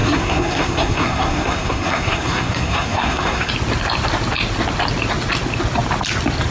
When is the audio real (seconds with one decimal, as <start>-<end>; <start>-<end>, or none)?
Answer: 3.5-6.5